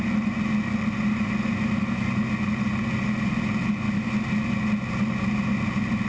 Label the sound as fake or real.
real